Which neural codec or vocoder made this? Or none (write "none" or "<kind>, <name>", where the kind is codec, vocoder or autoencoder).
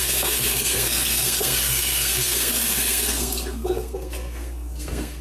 codec, SNAC